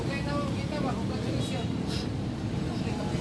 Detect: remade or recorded recorded